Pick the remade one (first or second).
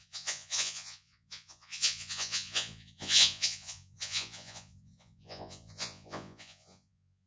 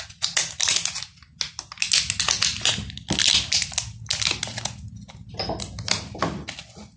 first